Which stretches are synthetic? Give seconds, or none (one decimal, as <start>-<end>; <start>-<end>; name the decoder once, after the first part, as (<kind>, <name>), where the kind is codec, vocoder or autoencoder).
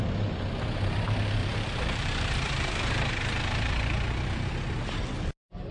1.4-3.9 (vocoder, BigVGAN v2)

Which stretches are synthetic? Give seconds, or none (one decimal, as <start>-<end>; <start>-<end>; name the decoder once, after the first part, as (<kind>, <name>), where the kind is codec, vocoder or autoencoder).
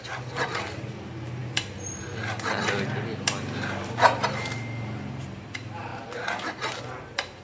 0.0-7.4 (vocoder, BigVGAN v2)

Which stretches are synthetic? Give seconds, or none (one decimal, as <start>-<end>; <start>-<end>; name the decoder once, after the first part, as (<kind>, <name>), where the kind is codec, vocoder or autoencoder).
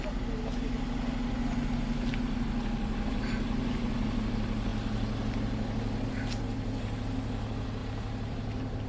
7.8-8.9 (vocoder, BigVGAN v2)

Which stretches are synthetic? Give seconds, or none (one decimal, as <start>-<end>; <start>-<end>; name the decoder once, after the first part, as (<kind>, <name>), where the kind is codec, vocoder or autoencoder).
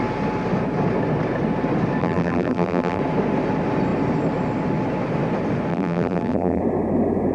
2.0-3.0 (vocoder, BigVGAN v2); 5.7-6.6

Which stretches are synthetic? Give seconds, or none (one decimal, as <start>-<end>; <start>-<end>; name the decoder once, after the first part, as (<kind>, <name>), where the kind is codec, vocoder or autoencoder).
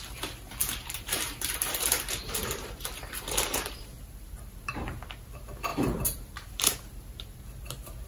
0.6-4.7 (vocoder, BigVGAN v2); 5.7-7.4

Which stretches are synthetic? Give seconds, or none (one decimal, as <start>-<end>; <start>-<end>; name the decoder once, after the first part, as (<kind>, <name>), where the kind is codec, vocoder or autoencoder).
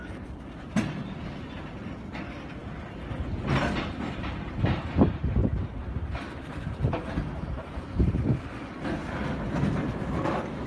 0.0-1.3 (vocoder, BigVGAN v2); 5.4-8.4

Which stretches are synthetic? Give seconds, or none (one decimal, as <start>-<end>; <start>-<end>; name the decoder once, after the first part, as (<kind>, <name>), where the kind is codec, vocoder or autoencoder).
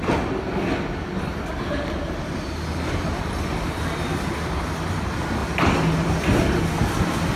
5.4-6.6 (vocoder, BigVGAN v2)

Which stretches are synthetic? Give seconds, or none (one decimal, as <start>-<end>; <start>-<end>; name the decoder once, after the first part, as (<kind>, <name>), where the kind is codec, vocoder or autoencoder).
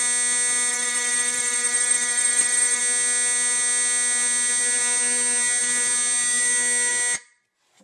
0.7-2.8 (vocoder, BigVGAN v2)